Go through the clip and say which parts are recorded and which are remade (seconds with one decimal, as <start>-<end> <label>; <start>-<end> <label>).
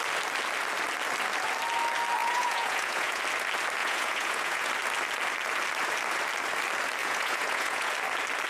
0.0-2.2 recorded; 2.2-3.2 remade; 3.2-3.8 recorded; 3.8-4.7 remade; 4.7-7.0 recorded; 7.0-7.9 remade; 7.9-8.5 recorded